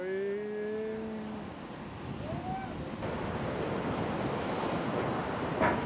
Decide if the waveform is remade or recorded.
recorded